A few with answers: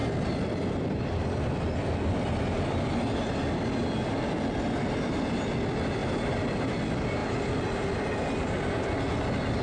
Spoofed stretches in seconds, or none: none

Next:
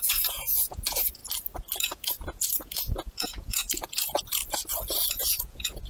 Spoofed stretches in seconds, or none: 0.0-1.2 (vocoder, Vocos); 1.8-4.4; 5.1-5.9

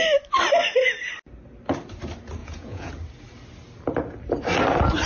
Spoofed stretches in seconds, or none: 2.4-2.9 (vocoder, Vocos)

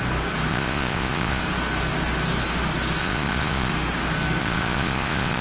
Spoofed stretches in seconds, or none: 0.5-1.4 (vocoder, Vocos); 3.0-3.7; 4.4-5.4

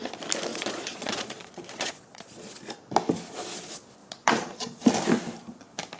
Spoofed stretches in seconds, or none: 0.5-2.5 (vocoder, Vocos); 4.0-4.8

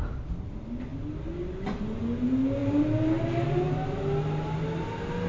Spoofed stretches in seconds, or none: none

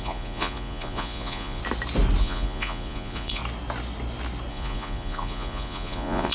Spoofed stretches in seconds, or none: 0.0-1.6 (vocoder, Vocos); 2.2-3.4; 4.5-6.3